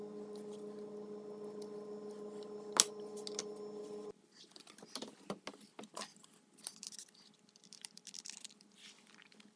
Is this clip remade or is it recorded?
recorded